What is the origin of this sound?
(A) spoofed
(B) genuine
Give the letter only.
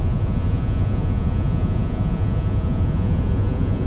A